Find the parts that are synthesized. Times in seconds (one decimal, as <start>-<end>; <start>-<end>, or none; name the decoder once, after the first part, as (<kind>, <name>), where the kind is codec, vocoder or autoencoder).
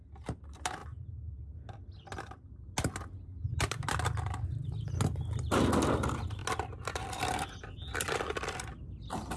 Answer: none